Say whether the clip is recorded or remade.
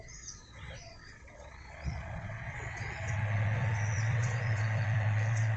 remade